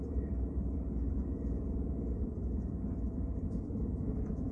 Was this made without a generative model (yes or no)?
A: no